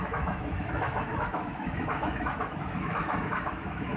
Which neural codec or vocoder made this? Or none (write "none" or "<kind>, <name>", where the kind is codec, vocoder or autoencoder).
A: autoencoder, DAC-VAE